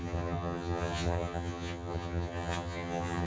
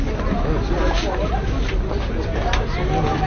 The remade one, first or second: first